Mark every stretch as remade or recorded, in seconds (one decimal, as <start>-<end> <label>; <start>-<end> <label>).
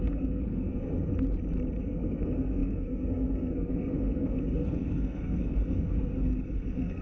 0.0-1.1 remade; 1.1-1.8 recorded; 1.8-7.0 remade